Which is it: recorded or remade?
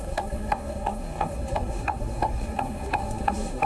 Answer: remade